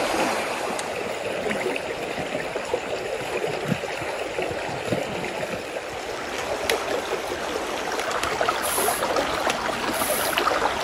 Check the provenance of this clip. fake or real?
real